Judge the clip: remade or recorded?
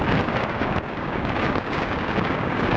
remade